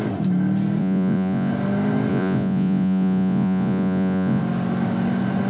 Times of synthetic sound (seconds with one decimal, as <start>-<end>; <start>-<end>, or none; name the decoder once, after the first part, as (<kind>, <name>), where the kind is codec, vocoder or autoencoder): 0.8-1.5 (vocoder, Vocos); 2.1-4.4